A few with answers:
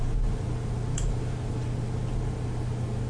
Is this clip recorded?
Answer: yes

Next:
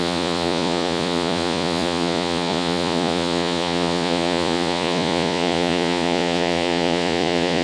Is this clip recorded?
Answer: no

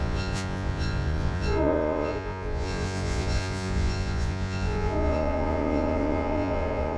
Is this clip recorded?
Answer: no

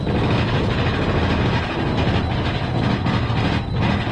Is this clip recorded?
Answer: yes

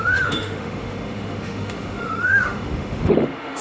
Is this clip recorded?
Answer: no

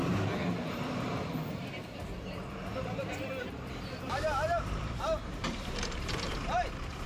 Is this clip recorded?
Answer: no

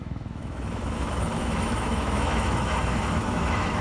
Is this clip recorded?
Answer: no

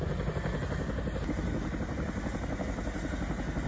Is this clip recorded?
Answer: yes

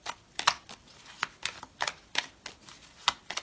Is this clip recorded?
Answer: yes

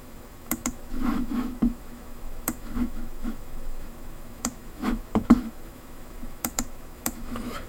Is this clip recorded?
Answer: no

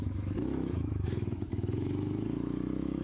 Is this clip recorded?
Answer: no